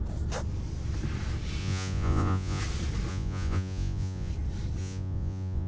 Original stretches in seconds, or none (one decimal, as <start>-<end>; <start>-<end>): 0.0-1.6; 2.6-3.1; 4.3-4.8